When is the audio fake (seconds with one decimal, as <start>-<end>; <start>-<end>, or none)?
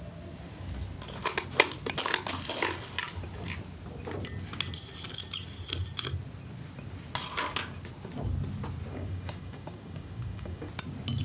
8.9-10.7